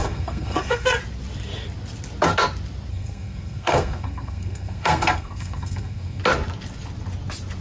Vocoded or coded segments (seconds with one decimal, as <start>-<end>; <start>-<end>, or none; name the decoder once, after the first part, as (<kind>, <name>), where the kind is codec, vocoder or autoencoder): 0.0-1.0 (codec, SNAC); 2.9-6.2